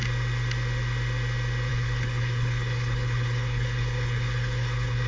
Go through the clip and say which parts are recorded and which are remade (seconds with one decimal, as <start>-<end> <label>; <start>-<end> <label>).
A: 0.0-1.7 recorded; 1.7-5.1 remade